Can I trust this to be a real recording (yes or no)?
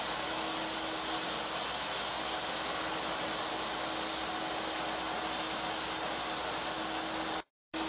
yes